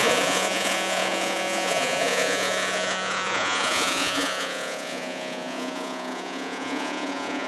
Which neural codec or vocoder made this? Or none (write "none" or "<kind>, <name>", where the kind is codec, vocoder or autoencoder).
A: vocoder, Vocos